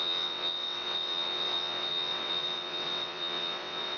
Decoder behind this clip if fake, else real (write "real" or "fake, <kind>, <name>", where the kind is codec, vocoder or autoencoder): fake, vocoder, WaveNeXt